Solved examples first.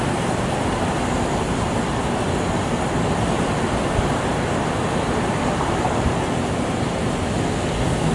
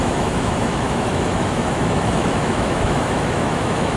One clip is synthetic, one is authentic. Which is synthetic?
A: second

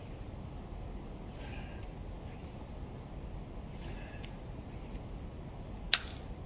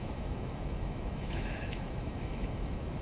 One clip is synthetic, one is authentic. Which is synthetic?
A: second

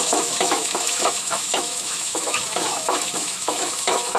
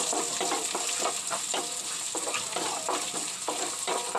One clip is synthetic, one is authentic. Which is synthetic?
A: first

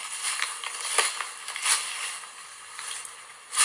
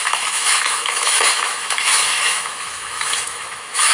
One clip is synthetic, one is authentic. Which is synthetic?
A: second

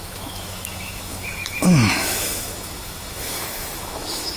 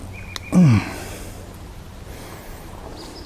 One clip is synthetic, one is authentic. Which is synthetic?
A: first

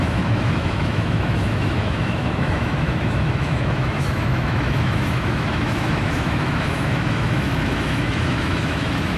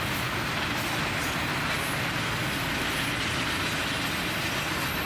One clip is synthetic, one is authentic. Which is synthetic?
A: first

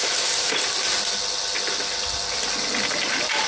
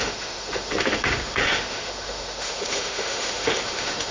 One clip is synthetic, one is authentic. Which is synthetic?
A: second